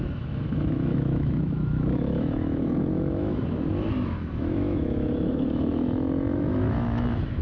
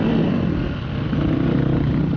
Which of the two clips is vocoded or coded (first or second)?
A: first